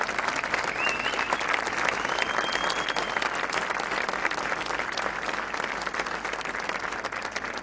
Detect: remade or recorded recorded